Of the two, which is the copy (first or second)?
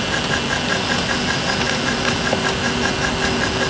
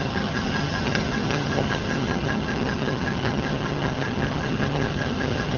second